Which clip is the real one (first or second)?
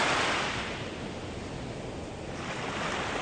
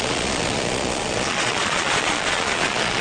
first